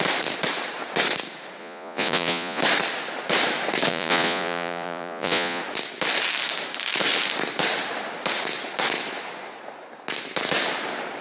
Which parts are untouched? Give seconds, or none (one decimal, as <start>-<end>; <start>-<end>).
0.0-1.6; 2.6-3.9; 5.6-11.2